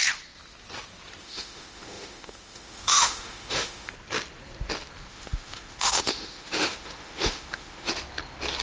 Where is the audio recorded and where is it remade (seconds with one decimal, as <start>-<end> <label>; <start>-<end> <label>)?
0.0-1.2 recorded; 1.2-3.9 remade; 3.9-5.1 recorded; 5.1-7.9 remade; 7.9-8.6 recorded